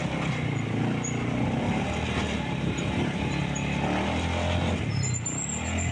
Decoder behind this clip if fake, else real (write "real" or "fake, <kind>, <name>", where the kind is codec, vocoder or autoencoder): real